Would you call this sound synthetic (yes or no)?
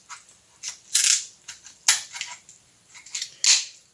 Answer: no